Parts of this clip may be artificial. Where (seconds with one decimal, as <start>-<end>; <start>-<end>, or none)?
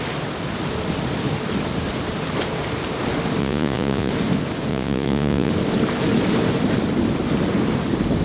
3.4-4.1; 4.7-5.5